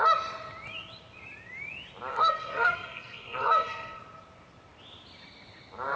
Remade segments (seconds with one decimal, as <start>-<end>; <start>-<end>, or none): 2.1-4.0